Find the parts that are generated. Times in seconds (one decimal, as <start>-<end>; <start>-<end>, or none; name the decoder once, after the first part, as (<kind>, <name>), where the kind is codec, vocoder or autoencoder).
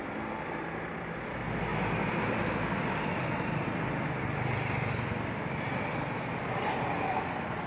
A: none